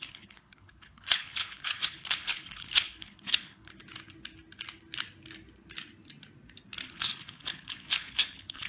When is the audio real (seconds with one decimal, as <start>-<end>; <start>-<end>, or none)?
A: 3.7-6.9